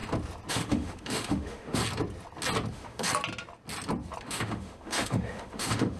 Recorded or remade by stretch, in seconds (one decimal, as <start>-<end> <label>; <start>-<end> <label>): 0.0-0.5 recorded; 0.5-1.8 remade; 1.8-2.7 recorded; 2.7-3.1 remade; 3.1-4.2 recorded; 4.2-6.0 remade